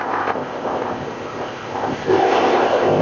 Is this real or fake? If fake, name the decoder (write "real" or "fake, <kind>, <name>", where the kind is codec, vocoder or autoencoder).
fake, codec, ZipCodec